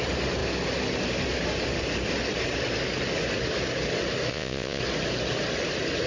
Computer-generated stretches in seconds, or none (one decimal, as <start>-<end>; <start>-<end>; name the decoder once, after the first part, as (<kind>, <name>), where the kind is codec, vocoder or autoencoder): 4.3-4.8 (vocoder, Vocos)